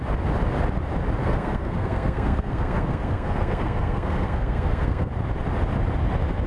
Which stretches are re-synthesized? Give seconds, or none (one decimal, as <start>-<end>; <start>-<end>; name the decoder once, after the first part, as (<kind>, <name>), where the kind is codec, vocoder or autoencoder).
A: 1.2-5.1 (codec, SNAC)